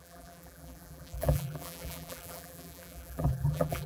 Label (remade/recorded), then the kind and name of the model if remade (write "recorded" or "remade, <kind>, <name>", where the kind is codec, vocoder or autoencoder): remade, vocoder, BigVGAN v2